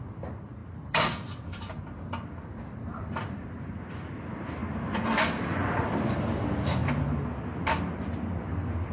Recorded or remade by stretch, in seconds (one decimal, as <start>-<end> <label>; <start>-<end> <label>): 0.0-4.6 remade; 4.6-5.2 recorded; 5.2-6.8 remade; 6.8-7.6 recorded; 7.6-8.9 remade